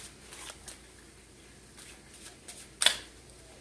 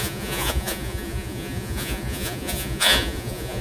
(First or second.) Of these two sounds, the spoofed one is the second